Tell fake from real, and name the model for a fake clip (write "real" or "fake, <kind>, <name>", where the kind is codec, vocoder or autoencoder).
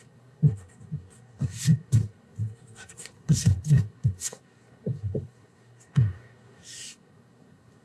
fake, codec, SNAC